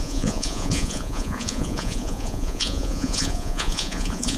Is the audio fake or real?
fake